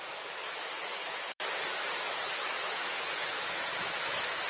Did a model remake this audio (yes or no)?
yes